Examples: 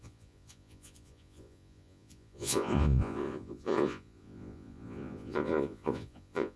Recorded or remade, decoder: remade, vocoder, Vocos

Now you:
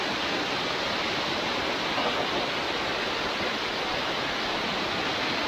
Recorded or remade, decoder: recorded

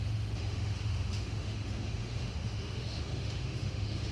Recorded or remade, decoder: remade, autoencoder, DAC-VAE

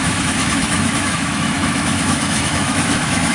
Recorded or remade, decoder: remade, autoencoder, DAC-VAE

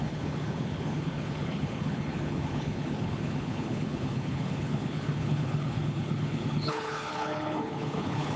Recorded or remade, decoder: remade, codec, HILCodec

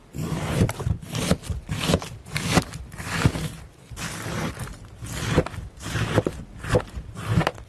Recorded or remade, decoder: recorded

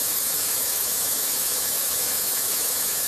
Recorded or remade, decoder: remade, autoencoder, DAC-VAE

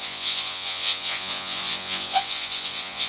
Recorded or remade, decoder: remade, vocoder, Vocos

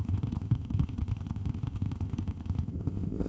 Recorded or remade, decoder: remade, codec, ZipCodec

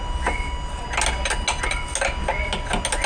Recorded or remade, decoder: recorded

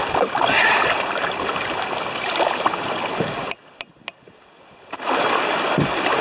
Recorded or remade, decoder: recorded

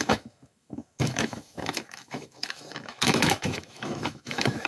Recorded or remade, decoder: remade, autoencoder, DAC-VAE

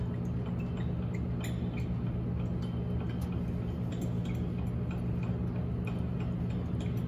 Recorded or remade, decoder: recorded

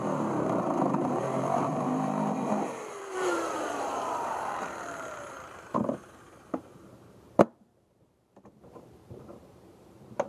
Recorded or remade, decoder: remade, vocoder, BigVGAN v2